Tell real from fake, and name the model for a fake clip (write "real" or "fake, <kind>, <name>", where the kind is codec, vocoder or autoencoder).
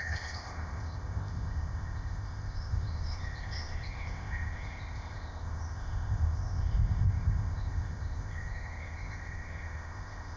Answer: fake, codec, ZipCodec